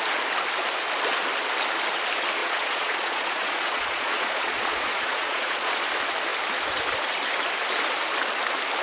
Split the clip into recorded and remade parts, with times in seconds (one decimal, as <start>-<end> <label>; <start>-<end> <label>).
0.0-2.4 recorded; 2.4-5.8 remade; 5.8-8.8 recorded